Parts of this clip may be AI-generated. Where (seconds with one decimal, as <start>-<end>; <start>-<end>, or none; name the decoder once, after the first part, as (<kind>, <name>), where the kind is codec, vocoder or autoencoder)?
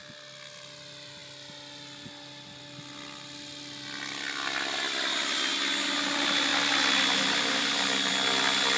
none